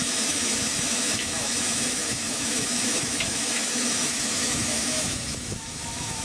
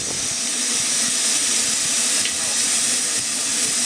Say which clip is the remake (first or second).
first